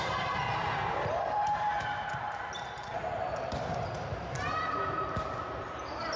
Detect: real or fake fake